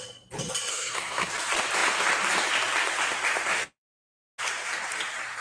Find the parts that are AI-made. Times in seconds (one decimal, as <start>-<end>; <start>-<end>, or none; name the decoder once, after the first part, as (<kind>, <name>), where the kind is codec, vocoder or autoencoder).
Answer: 0.7-1.3 (codec, SNAC)